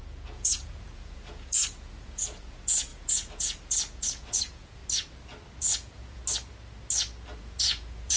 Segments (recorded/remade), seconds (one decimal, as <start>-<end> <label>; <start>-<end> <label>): 0.0-4.8 remade; 4.8-5.6 recorded; 5.6-6.2 remade; 6.2-7.4 recorded; 7.4-8.2 remade